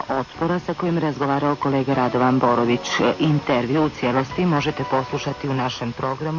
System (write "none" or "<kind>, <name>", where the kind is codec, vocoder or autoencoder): none